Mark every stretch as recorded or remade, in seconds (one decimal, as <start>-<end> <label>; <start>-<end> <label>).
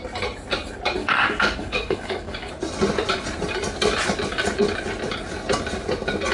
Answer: 0.0-1.0 recorded; 1.0-2.5 remade; 2.5-6.3 recorded